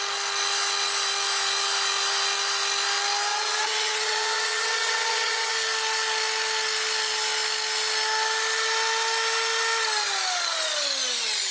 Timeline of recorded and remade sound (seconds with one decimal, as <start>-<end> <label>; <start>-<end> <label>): 0.0-3.3 recorded; 3.3-5.5 remade; 5.5-11.5 recorded

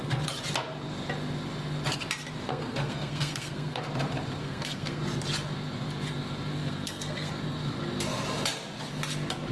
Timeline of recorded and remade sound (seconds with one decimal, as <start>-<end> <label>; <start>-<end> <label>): 0.0-2.5 recorded; 2.5-3.8 remade; 3.8-4.4 recorded; 4.4-5.0 remade; 5.0-6.6 recorded; 6.6-7.3 remade; 7.3-9.5 recorded

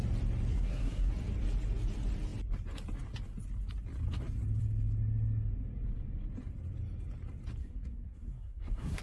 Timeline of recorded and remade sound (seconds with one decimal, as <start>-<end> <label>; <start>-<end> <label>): 0.0-0.5 recorded; 0.5-1.1 remade; 1.1-7.6 recorded; 7.6-9.0 remade